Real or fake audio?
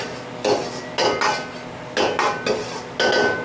real